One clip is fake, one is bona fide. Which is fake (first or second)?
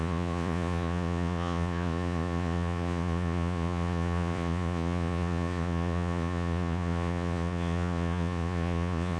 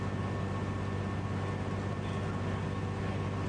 first